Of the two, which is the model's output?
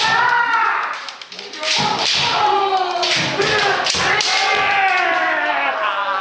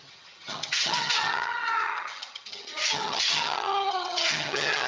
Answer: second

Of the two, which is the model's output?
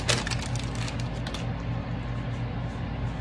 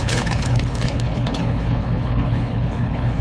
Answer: second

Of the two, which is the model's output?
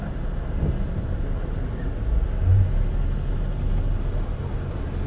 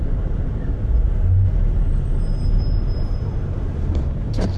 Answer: second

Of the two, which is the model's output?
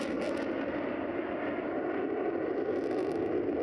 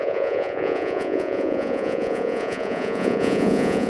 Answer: second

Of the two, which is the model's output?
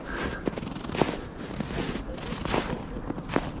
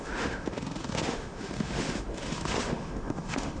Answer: second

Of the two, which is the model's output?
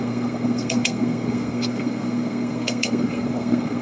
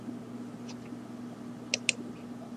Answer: first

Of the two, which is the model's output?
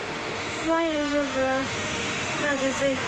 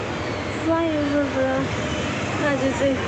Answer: first